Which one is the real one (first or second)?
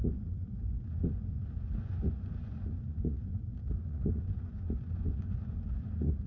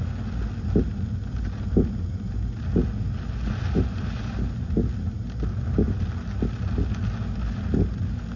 second